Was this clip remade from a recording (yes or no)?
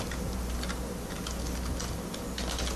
no